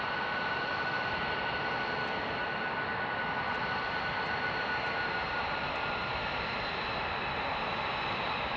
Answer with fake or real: real